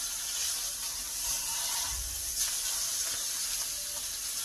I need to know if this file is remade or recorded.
recorded